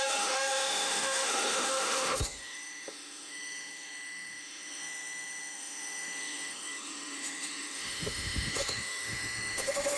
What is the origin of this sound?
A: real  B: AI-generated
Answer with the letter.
B